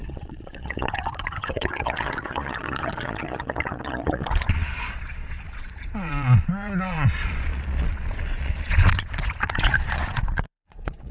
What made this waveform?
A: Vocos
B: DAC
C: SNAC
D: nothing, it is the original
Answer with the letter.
A